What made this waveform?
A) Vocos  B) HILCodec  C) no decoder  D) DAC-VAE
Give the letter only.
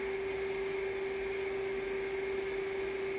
C